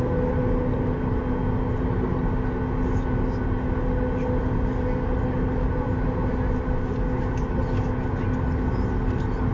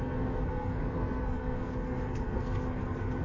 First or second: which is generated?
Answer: second